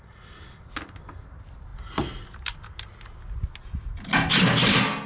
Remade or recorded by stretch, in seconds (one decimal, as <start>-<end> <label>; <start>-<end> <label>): 0.0-5.1 recorded